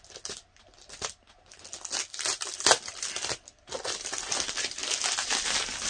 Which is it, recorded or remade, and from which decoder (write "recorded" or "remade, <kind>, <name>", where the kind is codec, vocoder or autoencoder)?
recorded